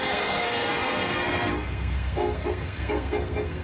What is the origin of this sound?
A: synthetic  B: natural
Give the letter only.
A